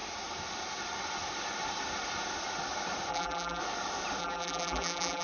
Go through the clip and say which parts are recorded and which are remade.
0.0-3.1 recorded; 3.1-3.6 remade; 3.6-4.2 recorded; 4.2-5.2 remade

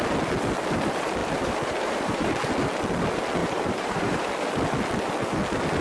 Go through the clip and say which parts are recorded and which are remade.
0.0-1.2 recorded; 1.2-2.5 remade; 2.5-3.4 recorded; 3.4-4.3 remade; 4.3-5.8 recorded

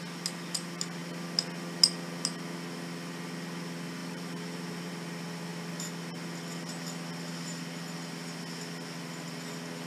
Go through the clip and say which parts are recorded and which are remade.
0.0-4.0 recorded; 4.0-4.9 remade; 4.9-9.9 recorded

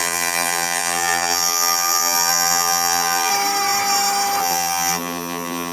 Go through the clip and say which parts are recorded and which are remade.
0.0-3.3 remade; 3.3-4.4 recorded; 4.4-5.7 remade